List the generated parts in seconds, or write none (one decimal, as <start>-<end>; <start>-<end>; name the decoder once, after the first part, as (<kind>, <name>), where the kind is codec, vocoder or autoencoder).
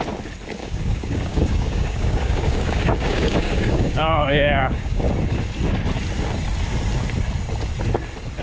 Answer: 0.6-5.0 (codec, DAC)